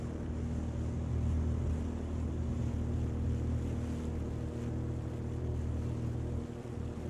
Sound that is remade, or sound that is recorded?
recorded